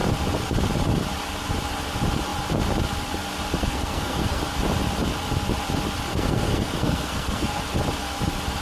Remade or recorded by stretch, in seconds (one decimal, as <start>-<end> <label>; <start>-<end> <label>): 0.0-3.6 recorded; 3.6-4.4 remade; 4.4-6.1 recorded; 6.1-7.6 remade; 7.6-8.6 recorded